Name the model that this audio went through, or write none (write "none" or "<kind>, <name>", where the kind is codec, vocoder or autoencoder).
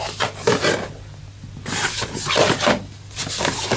none